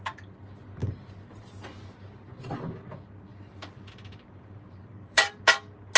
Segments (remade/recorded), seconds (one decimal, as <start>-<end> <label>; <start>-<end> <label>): 0.0-3.3 recorded; 3.3-5.3 remade; 5.3-6.0 recorded